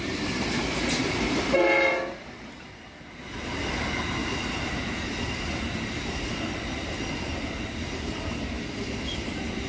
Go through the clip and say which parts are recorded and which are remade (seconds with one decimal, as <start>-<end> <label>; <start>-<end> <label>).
0.0-1.0 recorded; 1.0-2.5 remade; 2.5-4.2 recorded; 4.2-4.7 remade; 4.7-9.7 recorded